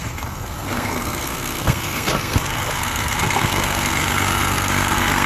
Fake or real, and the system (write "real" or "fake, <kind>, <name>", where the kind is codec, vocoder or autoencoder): fake, codec, SNAC